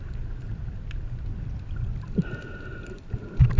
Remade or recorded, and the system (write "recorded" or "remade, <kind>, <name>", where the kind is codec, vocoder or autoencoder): recorded